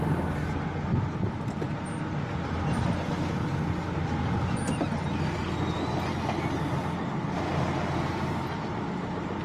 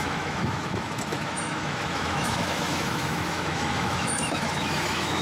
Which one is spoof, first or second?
second